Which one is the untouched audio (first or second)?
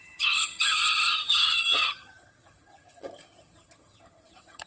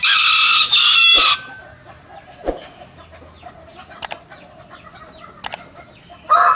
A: second